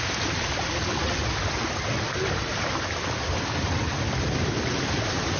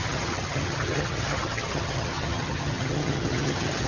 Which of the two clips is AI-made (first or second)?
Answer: second